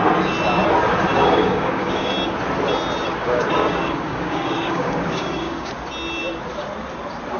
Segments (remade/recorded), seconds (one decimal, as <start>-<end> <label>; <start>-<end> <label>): 0.0-1.1 recorded; 1.1-2.1 remade; 2.1-3.2 recorded; 3.2-5.7 remade; 5.7-7.4 recorded